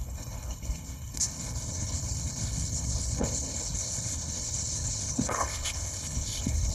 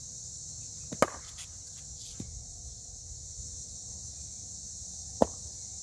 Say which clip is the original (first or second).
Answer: second